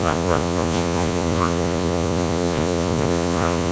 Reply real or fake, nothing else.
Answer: fake